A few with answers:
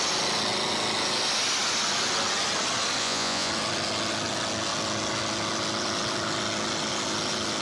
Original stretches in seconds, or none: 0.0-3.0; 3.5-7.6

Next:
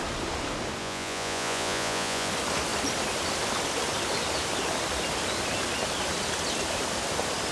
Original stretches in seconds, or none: 0.0-0.8; 2.3-7.5

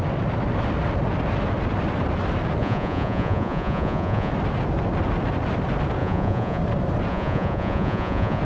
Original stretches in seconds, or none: 0.0-2.6; 4.3-6.0; 6.6-7.1